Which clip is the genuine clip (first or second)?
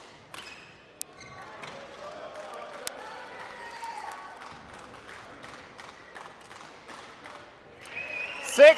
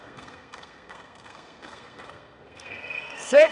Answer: first